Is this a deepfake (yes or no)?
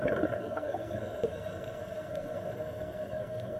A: yes